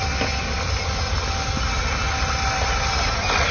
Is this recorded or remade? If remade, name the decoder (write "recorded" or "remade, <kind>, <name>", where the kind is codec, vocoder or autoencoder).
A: recorded